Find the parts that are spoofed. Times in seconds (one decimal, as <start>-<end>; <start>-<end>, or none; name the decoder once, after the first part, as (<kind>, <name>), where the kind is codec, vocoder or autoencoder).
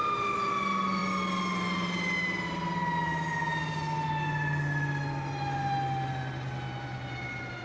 none